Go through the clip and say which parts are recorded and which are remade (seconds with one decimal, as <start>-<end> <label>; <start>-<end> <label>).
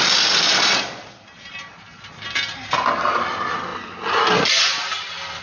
0.0-5.4 recorded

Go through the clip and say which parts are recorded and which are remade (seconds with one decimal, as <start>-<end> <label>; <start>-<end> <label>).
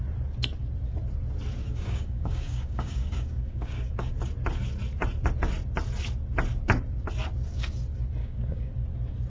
0.0-1.6 recorded; 1.6-4.1 remade; 4.1-8.2 recorded; 8.2-8.7 remade; 8.7-9.3 recorded